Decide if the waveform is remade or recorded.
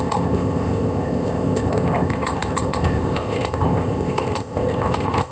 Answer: remade